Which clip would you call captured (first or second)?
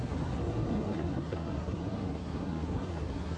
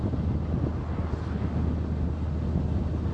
second